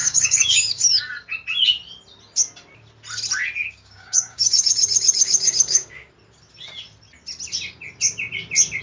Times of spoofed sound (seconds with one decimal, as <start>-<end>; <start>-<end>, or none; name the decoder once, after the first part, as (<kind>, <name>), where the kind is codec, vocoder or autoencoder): 0.0-1.0 (codec, DAC); 3.6-6.1